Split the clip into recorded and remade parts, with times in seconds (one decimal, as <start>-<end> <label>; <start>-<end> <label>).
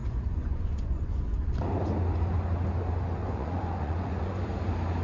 0.0-1.2 remade; 1.2-3.2 recorded; 3.2-4.4 remade; 4.4-5.0 recorded